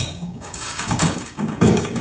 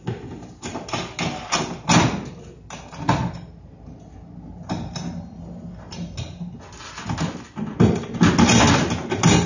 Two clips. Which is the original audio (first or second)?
second